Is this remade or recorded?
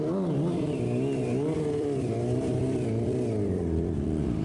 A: remade